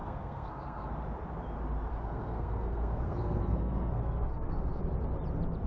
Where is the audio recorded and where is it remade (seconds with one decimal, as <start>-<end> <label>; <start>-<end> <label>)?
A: 0.0-0.9 remade; 0.9-1.9 recorded; 1.9-4.6 remade; 4.6-5.7 recorded